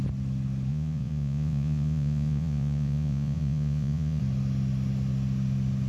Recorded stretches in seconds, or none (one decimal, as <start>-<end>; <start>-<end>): 0.0-0.7; 4.2-5.9